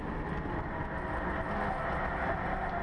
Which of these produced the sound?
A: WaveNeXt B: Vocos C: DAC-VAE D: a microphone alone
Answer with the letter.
D